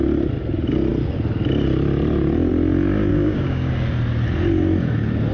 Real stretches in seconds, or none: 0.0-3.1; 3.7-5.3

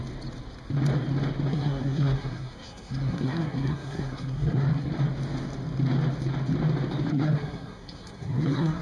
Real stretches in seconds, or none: 0.0-1.5; 4.9-7.1

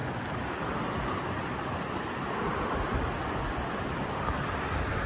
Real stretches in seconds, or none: 0.0-5.1

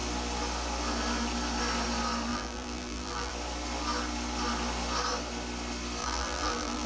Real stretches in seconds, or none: 0.0-2.3; 3.3-6.0

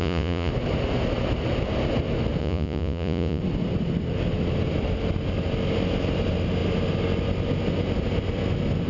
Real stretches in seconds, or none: 0.5-2.4; 3.4-8.9